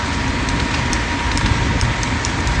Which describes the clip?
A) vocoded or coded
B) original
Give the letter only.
A